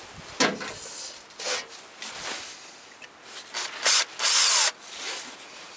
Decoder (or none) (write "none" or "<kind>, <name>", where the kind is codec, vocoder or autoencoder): none